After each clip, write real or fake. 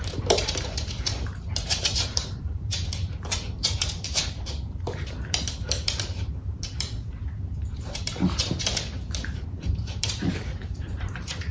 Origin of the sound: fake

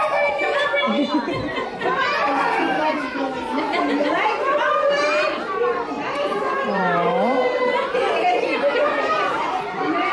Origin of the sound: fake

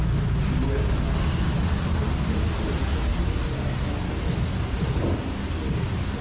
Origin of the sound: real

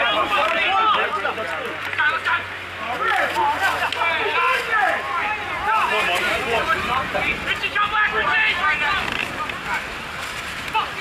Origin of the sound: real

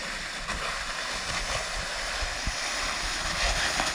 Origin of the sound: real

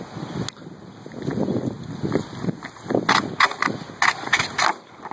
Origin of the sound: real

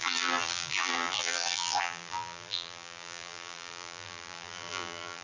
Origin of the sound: fake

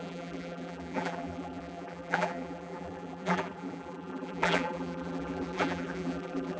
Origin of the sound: fake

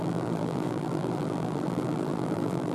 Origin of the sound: fake